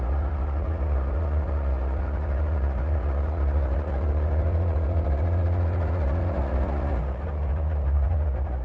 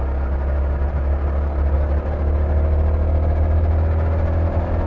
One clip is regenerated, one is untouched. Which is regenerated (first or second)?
first